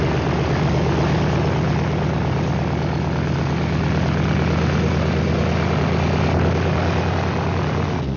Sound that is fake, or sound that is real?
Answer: real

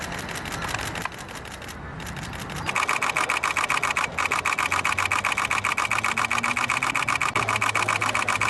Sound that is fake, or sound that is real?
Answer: real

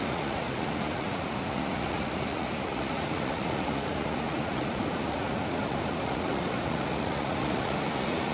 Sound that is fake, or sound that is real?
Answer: fake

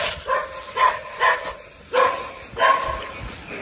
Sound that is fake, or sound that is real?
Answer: real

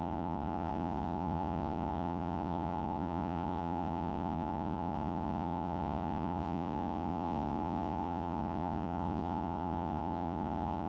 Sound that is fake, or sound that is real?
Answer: fake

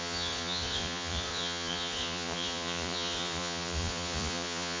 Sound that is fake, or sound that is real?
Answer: fake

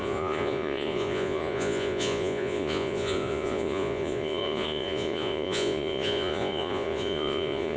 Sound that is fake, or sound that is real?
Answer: fake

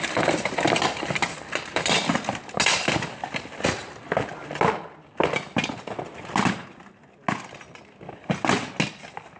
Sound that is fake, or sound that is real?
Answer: real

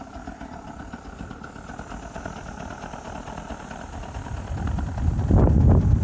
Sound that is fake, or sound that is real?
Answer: real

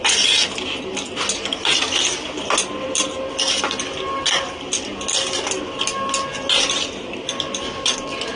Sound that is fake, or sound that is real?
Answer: real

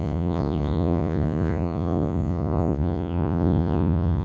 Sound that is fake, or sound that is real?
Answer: fake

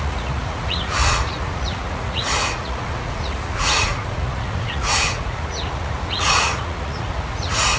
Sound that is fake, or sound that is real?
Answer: fake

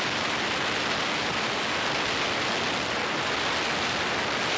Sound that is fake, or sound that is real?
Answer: real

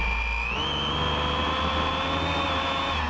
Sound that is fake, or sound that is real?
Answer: real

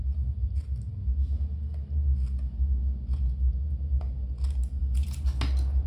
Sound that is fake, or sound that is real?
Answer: real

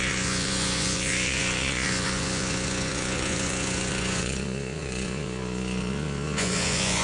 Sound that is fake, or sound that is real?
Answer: fake